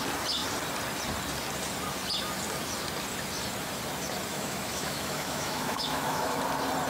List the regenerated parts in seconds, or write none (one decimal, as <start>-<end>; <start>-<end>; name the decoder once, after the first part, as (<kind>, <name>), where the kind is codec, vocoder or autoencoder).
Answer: 4.3-6.4 (autoencoder, DAC-VAE)